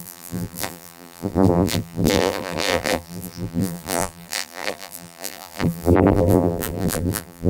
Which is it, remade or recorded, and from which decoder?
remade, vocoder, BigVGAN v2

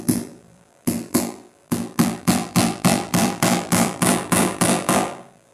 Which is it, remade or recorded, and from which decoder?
remade, vocoder, BigVGAN v2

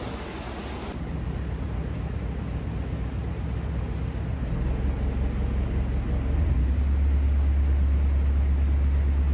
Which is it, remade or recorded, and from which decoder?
recorded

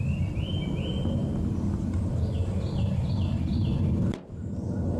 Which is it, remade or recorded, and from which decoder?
recorded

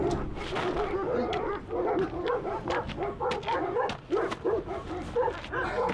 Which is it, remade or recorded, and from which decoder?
recorded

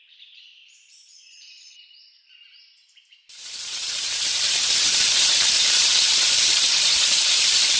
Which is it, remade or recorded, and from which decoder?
remade, vocoder, BigVGAN v2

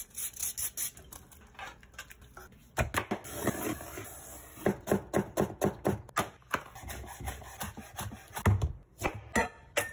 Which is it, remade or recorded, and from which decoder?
recorded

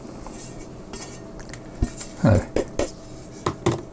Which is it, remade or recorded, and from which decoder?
recorded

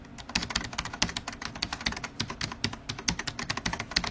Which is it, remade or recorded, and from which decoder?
recorded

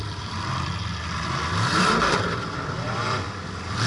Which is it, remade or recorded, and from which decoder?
remade, vocoder, BigVGAN v2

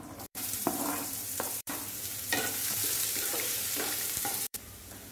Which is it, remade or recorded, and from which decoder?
remade, vocoder, BigVGAN v2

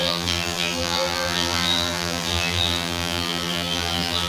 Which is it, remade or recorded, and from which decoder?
remade, vocoder, BigVGAN v2